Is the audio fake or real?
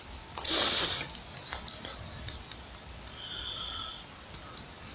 real